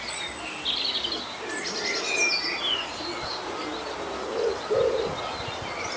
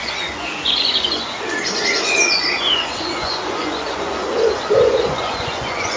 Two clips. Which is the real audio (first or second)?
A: first